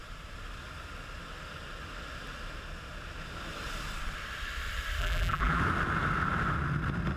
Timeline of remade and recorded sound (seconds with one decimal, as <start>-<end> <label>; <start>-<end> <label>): 0.0-5.0 recorded; 5.0-5.6 remade; 5.6-7.2 recorded